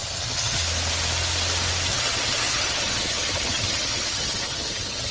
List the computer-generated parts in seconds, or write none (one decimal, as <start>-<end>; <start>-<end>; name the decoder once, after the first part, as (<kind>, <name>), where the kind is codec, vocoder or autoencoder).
0.0-0.6 (vocoder, HiFi-GAN); 1.9-5.1